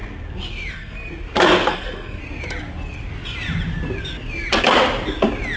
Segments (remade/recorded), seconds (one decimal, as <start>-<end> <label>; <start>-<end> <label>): 0.0-0.7 recorded; 0.7-1.1 remade; 1.1-1.7 recorded; 1.7-2.2 remade; 2.2-5.6 recorded